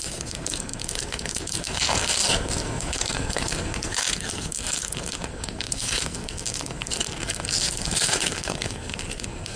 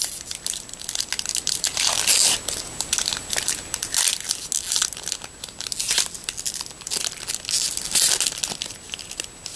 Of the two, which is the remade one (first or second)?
first